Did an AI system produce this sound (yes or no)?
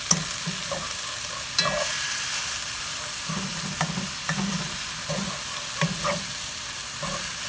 yes